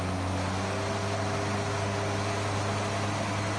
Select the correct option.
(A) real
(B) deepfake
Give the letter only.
A